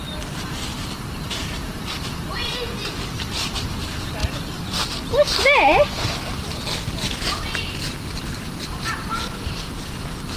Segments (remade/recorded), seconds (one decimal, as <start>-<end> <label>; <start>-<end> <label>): 0.0-4.2 remade; 4.2-5.9 recorded; 5.9-6.6 remade; 6.6-8.0 recorded; 8.0-10.4 remade